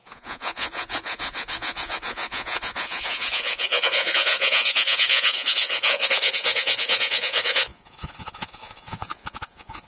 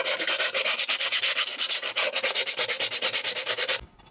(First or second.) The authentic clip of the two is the second